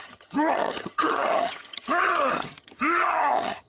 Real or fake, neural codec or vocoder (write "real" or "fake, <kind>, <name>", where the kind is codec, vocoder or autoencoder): fake, vocoder, HiFi-GAN